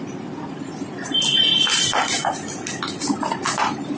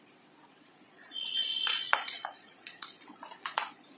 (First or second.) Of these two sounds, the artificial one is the second